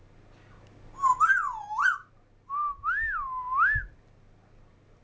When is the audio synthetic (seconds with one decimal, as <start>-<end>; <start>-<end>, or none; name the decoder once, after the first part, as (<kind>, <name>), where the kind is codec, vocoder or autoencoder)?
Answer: none